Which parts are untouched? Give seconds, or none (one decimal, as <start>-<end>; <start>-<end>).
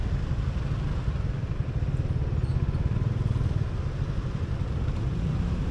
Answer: 0.0-5.7